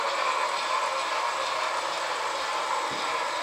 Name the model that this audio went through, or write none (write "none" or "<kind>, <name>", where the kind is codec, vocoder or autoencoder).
none